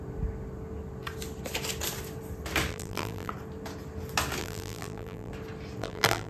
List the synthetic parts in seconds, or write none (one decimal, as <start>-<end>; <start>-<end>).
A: 2.7-3.3; 4.4-5.3; 5.8-6.3